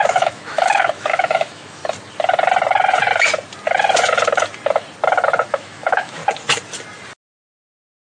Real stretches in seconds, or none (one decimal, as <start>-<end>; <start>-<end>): 1.8-5.5; 6.2-8.2